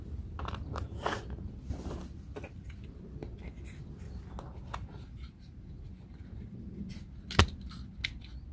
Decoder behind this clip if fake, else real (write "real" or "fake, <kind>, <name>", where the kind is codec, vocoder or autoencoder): real